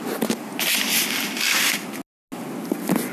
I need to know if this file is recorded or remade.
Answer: recorded